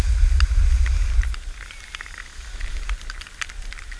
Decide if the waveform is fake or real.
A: real